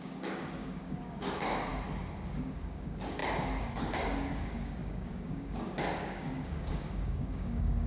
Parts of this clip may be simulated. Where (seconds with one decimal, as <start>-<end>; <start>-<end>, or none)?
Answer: 0.0-1.7; 2.4-7.9